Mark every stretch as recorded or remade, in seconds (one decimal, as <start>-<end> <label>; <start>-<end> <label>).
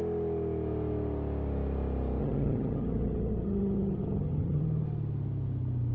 0.0-2.2 recorded; 2.2-4.6 remade; 4.6-5.9 recorded